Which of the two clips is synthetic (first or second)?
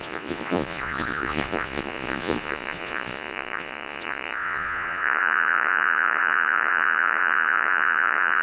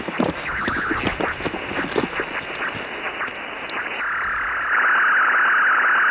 first